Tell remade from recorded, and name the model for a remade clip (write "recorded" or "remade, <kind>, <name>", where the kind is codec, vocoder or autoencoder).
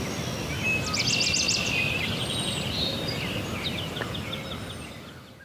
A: recorded